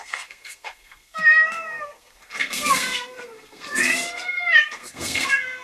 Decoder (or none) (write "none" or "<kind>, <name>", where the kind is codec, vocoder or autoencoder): codec, SNAC